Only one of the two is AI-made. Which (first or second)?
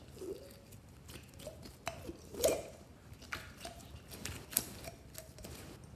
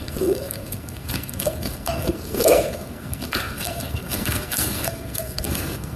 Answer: second